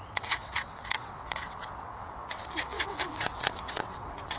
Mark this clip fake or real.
fake